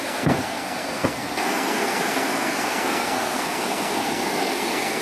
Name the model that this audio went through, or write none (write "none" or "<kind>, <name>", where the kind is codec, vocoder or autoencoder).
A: codec, SNAC